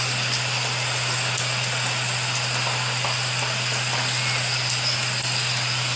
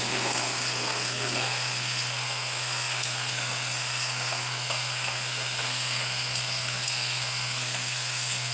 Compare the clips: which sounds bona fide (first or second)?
first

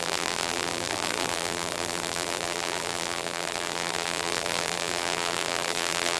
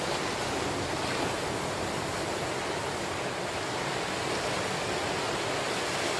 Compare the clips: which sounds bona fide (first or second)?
second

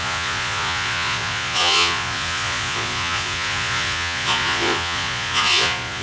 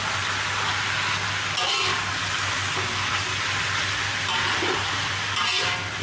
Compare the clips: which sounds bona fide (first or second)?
second